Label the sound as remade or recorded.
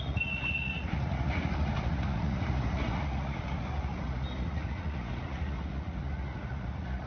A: remade